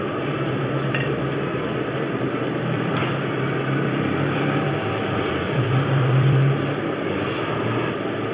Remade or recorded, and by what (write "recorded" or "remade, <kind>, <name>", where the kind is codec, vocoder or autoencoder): remade, vocoder, BigVGAN v2